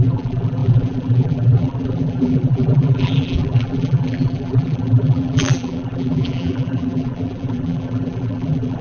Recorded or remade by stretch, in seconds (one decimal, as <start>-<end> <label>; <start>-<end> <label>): 0.0-8.8 remade